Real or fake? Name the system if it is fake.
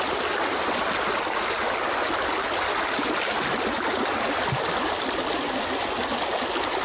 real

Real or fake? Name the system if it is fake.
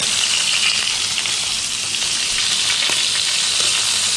real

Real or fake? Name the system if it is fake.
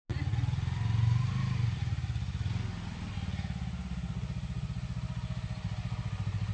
real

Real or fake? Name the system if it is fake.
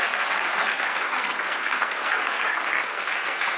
fake, codec, SNAC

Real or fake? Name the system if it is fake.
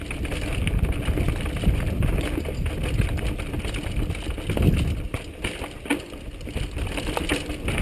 real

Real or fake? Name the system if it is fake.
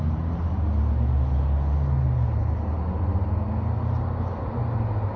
real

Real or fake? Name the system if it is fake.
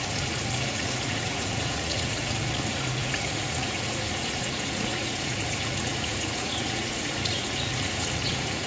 fake, vocoder, Vocos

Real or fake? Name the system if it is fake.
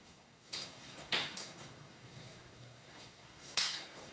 fake, codec, SNAC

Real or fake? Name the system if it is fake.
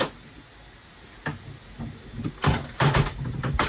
real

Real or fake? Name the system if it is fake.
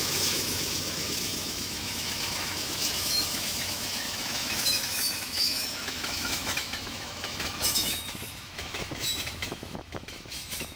fake, autoencoder, DAC-VAE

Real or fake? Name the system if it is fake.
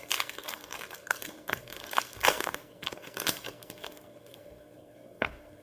fake, codec, SNAC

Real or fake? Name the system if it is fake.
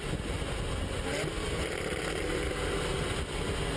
real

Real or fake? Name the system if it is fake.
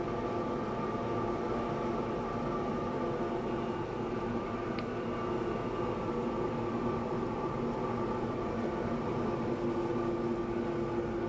real